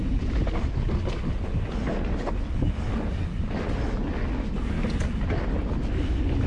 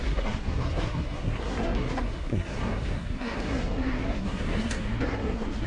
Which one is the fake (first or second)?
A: second